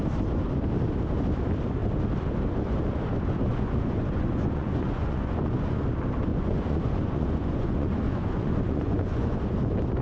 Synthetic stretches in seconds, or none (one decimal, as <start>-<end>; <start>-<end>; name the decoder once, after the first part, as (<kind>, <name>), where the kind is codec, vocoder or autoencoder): 3.5-5.8 (vocoder, Vocos); 6.3-9.4